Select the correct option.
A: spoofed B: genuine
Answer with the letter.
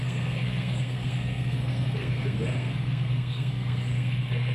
A